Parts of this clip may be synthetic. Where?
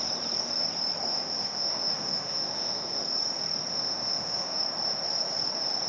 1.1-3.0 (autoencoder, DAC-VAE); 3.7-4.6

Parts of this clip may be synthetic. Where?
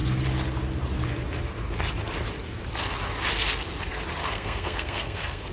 4.2-5.5 (codec, SNAC)